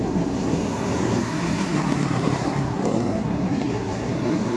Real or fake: fake